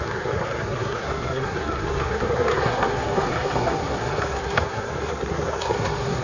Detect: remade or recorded remade